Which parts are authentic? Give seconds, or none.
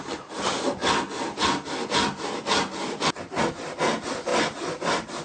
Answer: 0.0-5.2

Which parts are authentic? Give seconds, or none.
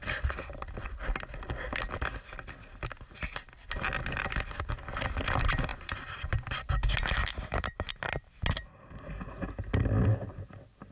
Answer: 0.0-5.7; 6.7-7.2; 7.9-10.9